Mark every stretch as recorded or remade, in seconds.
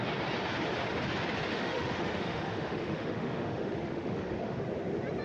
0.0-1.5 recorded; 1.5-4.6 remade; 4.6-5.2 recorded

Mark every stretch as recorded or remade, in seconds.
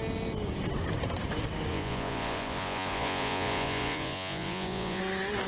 0.0-1.7 recorded; 1.7-5.0 remade; 5.0-5.5 recorded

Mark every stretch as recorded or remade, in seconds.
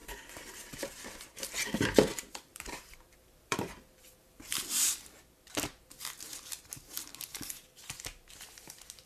0.0-3.7 remade; 3.7-4.2 recorded; 4.2-4.9 remade; 4.9-9.1 recorded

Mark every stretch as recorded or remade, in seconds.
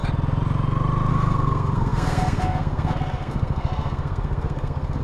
0.0-1.1 recorded; 1.1-5.0 remade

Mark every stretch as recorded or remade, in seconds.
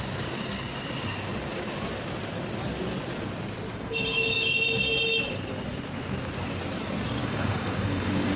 0.0-3.7 recorded; 3.7-4.6 remade; 4.6-7.2 recorded; 7.2-8.4 remade